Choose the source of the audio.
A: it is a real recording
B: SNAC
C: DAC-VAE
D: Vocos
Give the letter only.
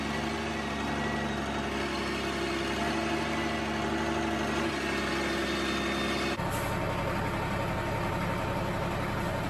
A